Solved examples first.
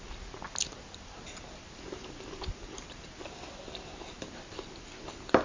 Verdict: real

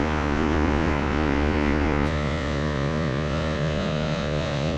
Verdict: fake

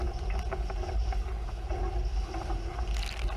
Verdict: real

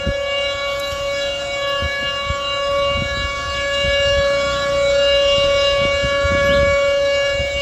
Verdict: fake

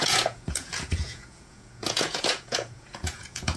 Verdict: fake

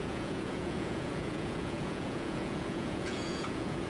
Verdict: fake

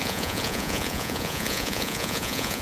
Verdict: fake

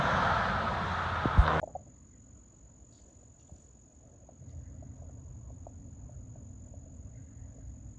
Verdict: real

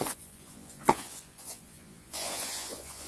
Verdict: fake